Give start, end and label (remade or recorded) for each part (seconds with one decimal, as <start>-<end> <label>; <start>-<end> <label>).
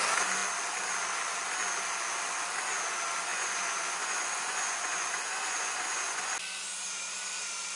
0.0-3.3 recorded; 3.3-6.3 remade; 6.3-7.8 recorded